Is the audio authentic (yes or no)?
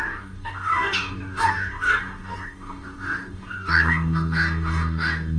no